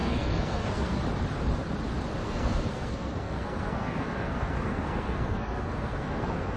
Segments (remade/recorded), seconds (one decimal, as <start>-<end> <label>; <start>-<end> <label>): 0.0-1.0 remade; 1.0-2.2 recorded; 2.2-6.6 remade